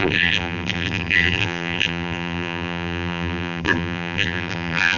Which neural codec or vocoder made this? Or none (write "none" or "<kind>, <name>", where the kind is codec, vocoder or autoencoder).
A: vocoder, BigVGAN v2